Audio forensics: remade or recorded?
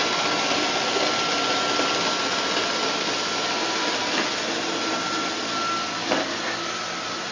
recorded